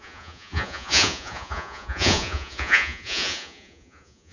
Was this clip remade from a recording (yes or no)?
yes